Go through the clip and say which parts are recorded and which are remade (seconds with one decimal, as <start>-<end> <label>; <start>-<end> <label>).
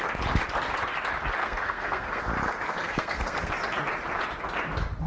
0.0-1.4 recorded; 1.4-2.2 remade; 2.2-2.8 recorded; 2.8-3.5 remade; 3.5-5.1 recorded